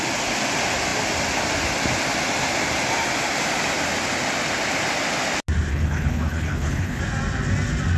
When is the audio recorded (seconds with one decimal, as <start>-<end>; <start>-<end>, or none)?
0.0-5.7; 7.0-8.0

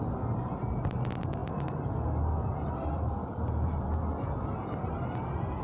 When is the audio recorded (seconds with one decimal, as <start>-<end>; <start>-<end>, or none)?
0.0-5.6

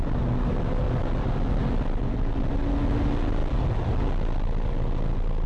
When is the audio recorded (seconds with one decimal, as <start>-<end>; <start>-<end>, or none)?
0.0-1.6; 2.5-3.4; 3.9-5.5

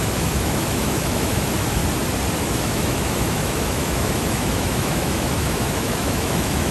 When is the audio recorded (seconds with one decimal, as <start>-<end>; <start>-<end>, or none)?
1.8-2.4

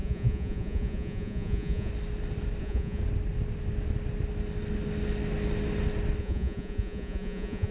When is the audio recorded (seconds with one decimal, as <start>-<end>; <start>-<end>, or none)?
1.9-2.6; 3.0-6.2

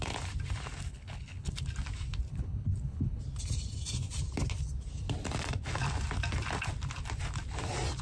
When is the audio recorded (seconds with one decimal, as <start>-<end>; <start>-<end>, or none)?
0.0-0.9; 1.5-2.3; 3.2-8.0